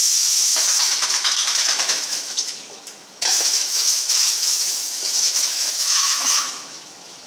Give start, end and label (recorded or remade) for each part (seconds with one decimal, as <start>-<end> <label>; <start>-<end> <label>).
0.0-7.3 remade